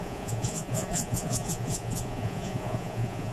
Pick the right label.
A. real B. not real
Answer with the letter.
B